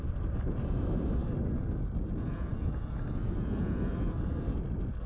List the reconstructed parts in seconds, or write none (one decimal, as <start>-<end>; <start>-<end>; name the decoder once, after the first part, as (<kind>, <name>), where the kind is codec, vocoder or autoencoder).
none